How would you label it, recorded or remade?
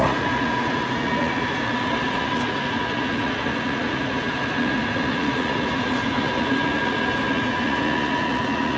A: remade